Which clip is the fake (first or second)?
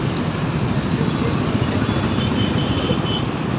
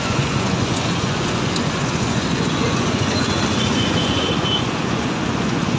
second